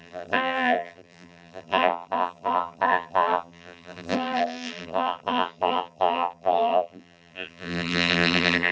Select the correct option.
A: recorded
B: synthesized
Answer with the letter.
B